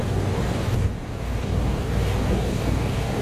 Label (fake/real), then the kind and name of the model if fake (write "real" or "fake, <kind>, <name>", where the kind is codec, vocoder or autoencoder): fake, codec, DAC